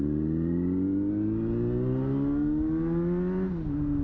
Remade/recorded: recorded